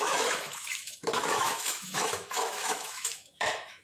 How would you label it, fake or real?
fake